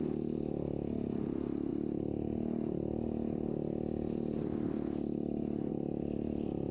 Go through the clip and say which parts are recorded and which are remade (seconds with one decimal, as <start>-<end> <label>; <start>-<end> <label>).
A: 0.0-6.7 recorded